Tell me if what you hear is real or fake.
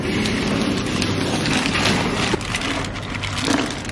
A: real